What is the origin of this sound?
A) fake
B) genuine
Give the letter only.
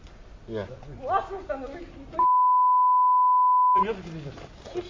B